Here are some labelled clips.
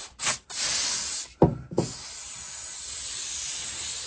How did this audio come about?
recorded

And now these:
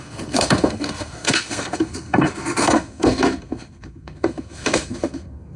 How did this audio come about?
remade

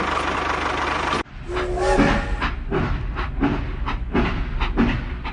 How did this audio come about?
recorded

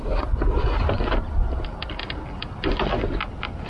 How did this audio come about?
recorded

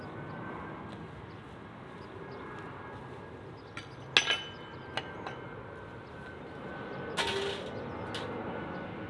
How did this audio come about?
recorded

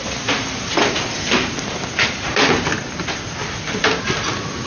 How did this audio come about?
recorded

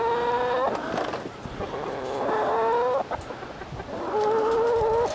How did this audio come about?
recorded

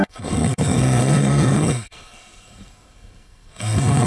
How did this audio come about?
remade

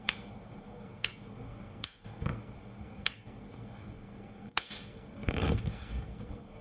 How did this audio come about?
remade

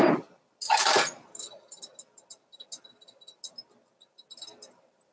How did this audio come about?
recorded